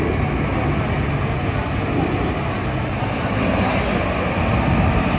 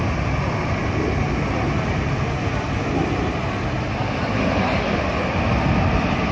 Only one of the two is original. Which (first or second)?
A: first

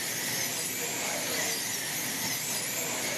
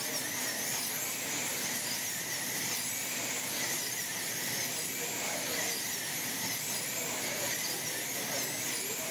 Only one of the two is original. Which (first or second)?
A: first